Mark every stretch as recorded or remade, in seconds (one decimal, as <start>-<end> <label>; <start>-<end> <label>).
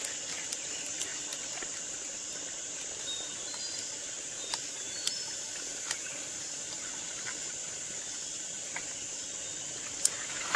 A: 0.0-10.6 recorded